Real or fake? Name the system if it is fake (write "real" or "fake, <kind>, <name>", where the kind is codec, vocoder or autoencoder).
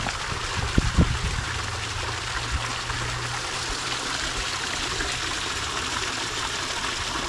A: real